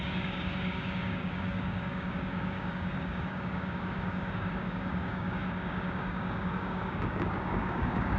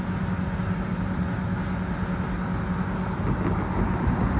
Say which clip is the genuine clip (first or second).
second